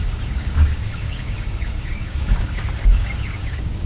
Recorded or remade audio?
remade